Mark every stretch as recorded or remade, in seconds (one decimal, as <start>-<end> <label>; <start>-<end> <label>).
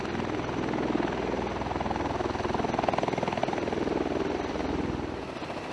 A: 0.0-3.4 recorded; 3.4-5.2 remade; 5.2-5.7 recorded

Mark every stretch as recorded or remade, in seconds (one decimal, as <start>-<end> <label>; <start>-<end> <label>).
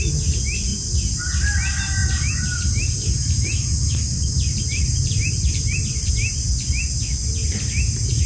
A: 0.0-2.0 recorded; 2.0-6.1 remade; 6.1-8.3 recorded